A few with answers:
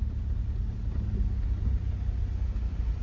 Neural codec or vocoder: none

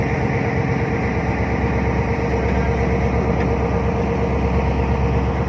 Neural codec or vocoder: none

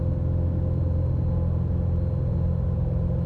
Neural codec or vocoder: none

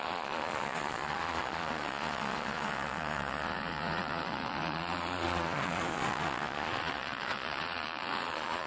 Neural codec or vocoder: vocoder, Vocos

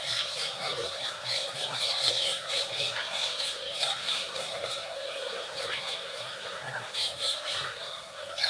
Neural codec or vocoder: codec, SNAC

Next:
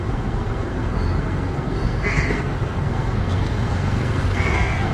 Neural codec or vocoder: codec, SNAC